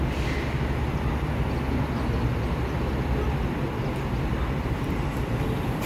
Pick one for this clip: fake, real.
real